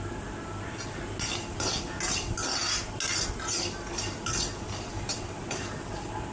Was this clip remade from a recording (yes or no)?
no